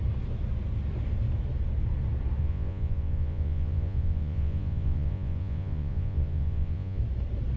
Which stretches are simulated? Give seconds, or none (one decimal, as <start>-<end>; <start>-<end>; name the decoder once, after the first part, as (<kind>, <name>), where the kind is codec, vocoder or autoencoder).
2.4-7.0 (vocoder, Vocos)